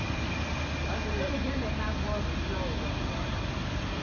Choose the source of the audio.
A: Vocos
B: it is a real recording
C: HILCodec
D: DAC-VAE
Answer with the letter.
B